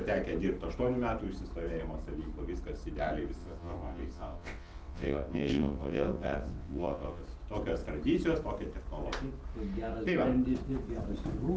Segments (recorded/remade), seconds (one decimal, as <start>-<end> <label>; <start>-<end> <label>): 0.0-3.4 recorded; 3.4-7.2 remade; 7.2-11.6 recorded